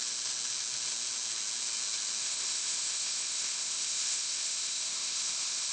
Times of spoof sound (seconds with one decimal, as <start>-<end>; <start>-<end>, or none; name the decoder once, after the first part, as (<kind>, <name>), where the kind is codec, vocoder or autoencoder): 2.2-5.7 (codec, ZipCodec)